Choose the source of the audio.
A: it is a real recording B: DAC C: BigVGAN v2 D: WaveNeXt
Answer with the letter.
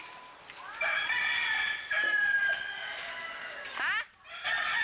A